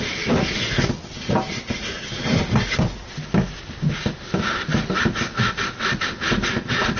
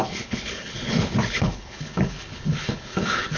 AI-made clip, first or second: second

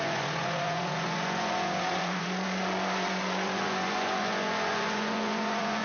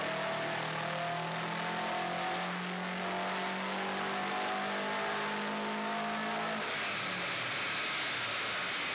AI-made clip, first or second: first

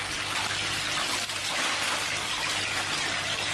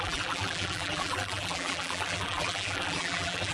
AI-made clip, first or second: second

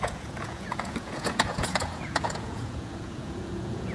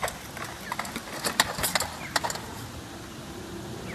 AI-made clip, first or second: first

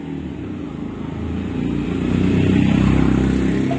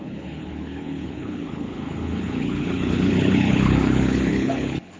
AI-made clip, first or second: second